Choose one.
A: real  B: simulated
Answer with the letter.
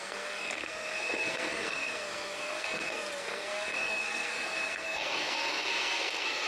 B